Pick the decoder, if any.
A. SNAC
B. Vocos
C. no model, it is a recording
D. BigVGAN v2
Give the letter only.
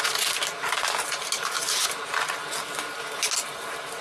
C